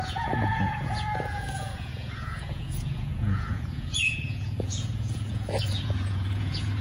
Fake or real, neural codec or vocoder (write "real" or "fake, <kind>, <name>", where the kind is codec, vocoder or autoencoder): fake, vocoder, Vocos